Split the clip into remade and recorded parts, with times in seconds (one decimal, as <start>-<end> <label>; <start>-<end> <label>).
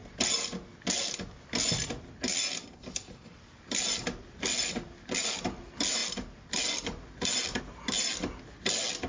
0.0-9.1 recorded